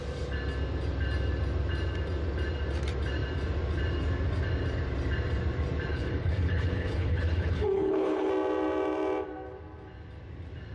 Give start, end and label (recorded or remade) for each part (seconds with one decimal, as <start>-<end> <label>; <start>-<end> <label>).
0.0-5.9 recorded; 5.9-8.3 remade; 8.3-10.7 recorded